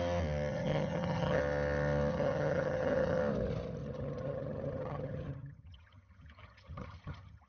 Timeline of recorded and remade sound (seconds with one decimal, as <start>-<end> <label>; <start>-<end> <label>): 0.0-0.5 recorded; 0.5-1.4 remade; 1.4-2.1 recorded; 2.1-3.2 remade; 3.2-3.8 recorded; 3.8-7.5 remade